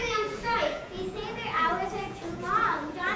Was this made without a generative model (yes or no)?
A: no